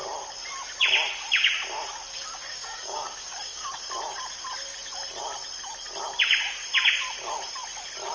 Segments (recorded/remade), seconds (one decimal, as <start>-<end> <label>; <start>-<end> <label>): 0.0-2.0 recorded; 2.0-3.7 remade; 3.7-8.1 recorded

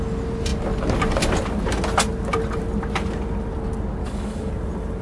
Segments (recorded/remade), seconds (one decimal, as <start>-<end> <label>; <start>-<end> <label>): 0.0-4.0 recorded; 4.0-4.5 remade; 4.5-5.0 recorded

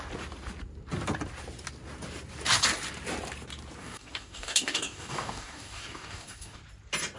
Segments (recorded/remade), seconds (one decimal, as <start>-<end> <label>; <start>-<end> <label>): 0.0-3.8 recorded; 3.8-6.6 remade; 6.6-7.2 recorded

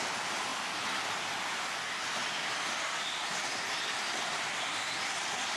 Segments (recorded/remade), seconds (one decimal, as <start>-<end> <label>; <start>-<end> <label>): 0.0-5.6 recorded